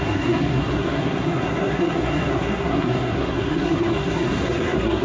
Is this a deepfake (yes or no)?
yes